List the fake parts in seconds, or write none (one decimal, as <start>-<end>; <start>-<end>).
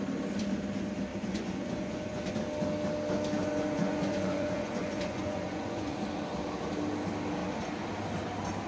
1.1-2.3; 3.4-6.0